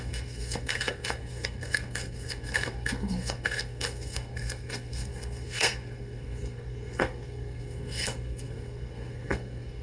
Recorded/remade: remade